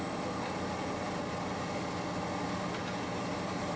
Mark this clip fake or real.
real